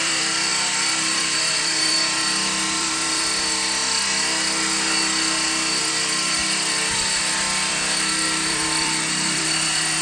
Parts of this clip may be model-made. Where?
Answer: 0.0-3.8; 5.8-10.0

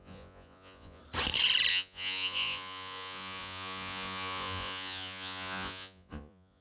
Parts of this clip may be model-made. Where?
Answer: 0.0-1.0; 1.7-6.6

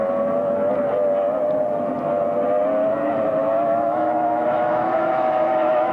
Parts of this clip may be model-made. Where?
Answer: 3.4-5.9

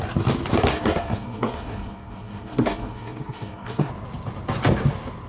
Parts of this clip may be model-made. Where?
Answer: 0.7-3.9

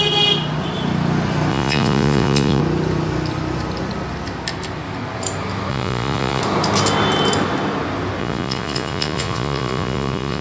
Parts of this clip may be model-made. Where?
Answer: 1.5-2.6; 5.7-6.4; 8.2-10.4